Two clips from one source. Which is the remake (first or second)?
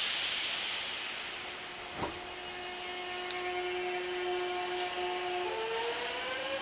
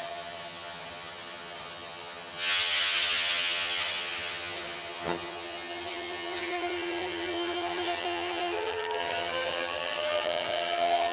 second